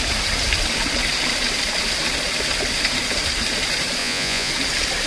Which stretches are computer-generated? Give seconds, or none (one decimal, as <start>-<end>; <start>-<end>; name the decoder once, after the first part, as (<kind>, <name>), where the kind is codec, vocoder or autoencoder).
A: 4.0-4.5 (vocoder, Vocos)